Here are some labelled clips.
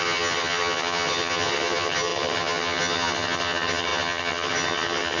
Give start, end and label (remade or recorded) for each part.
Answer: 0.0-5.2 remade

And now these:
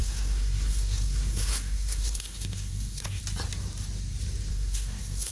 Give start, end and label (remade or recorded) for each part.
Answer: 0.0-3.2 remade; 3.2-4.5 recorded; 4.5-5.3 remade

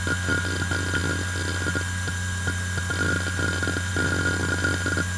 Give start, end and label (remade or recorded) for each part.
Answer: 0.0-5.2 recorded

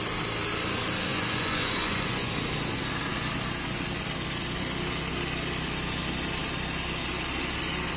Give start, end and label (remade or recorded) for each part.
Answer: 0.0-1.1 recorded; 1.1-2.3 remade; 2.3-8.0 recorded